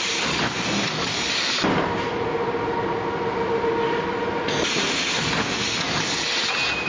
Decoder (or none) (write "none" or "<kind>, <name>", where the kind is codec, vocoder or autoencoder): none